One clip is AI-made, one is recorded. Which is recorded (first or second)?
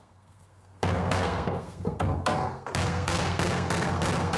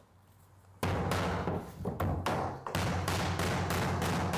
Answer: second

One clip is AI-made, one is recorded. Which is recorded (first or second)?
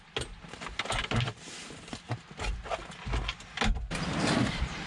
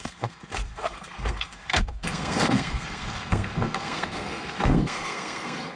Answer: first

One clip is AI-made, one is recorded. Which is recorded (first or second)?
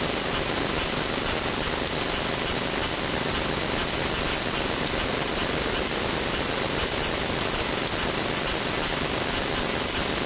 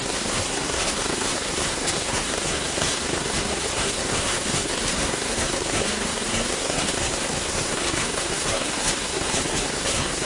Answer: first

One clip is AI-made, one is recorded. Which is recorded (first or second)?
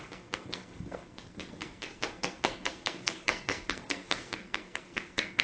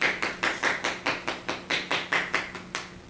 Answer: second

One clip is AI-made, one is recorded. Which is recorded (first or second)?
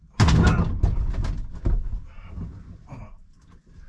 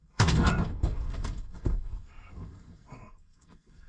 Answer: first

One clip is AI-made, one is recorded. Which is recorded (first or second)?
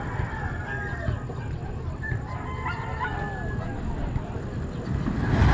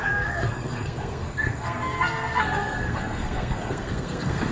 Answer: first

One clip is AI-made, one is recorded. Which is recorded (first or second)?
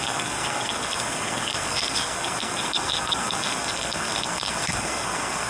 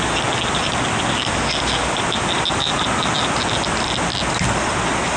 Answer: second